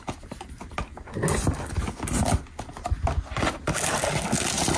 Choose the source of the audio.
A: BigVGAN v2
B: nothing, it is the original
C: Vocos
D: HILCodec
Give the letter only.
B